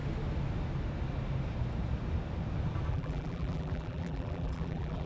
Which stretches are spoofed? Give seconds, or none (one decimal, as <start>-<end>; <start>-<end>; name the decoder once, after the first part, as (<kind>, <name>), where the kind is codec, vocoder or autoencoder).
2.9-5.1 (vocoder, BigVGAN v2)